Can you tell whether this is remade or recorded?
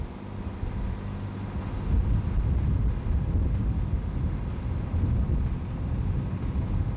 recorded